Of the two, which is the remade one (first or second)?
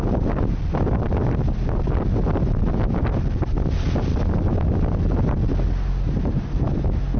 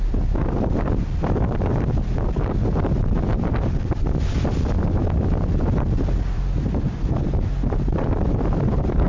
second